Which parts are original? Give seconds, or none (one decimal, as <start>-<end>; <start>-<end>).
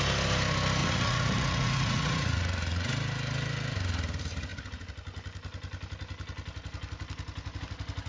0.0-0.8; 2.9-8.1